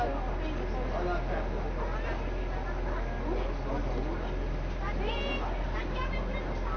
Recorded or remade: recorded